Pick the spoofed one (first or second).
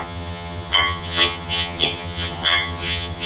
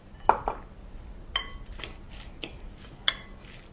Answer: first